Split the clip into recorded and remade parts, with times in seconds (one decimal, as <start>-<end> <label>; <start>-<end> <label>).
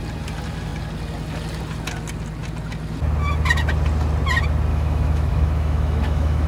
0.0-4.7 recorded; 4.7-6.5 remade